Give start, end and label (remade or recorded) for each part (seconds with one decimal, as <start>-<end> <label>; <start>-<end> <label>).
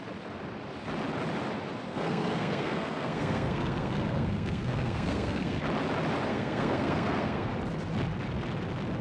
0.0-1.9 recorded; 1.9-5.6 remade; 5.6-6.3 recorded; 6.3-7.5 remade; 7.5-9.0 recorded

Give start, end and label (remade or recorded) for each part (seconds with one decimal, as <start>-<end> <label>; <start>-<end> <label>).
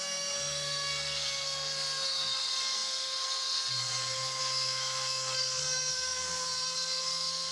0.0-7.5 remade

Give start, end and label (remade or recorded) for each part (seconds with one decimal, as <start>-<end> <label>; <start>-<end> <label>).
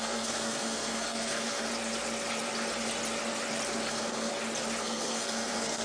0.0-1.7 remade; 1.7-3.9 recorded; 3.9-4.3 remade; 4.3-4.8 recorded; 4.8-5.8 remade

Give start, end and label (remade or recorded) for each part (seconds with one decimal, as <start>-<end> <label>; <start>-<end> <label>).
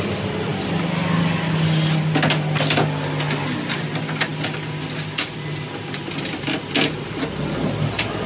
0.0-8.3 recorded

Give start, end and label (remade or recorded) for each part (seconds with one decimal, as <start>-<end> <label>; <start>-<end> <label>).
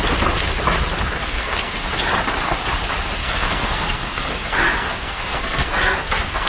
0.0-1.2 recorded; 1.2-1.8 remade; 1.8-3.2 recorded; 3.2-6.5 remade